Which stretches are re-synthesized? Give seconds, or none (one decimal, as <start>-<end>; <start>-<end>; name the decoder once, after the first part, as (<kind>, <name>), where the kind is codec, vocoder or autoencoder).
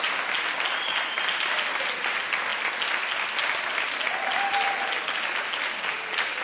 none